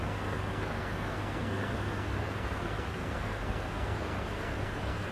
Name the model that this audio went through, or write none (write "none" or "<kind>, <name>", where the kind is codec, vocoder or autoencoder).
codec, SNAC